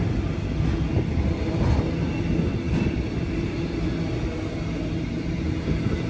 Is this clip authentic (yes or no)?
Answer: yes